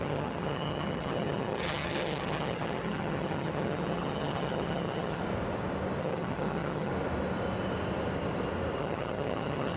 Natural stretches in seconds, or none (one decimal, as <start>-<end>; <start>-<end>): 5.2-6.0; 6.9-8.8